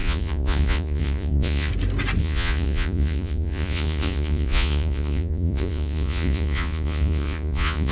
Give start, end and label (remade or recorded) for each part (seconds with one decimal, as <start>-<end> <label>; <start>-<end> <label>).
0.0-1.7 remade; 1.7-2.2 recorded; 2.2-7.9 remade